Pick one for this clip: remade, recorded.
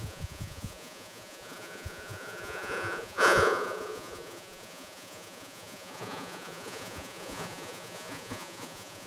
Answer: remade